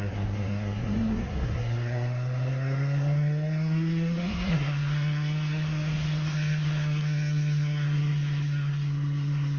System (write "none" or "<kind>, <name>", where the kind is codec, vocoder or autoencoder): codec, SNAC